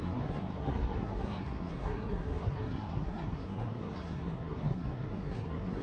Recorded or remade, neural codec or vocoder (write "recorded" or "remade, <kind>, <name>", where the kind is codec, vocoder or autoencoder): remade, codec, SNAC